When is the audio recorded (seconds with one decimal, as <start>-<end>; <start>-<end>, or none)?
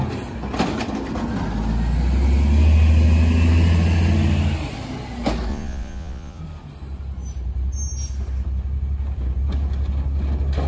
0.0-5.5; 6.4-10.7